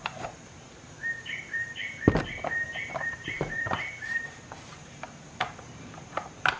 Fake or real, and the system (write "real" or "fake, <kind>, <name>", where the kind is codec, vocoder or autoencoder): fake, vocoder, BigVGAN v2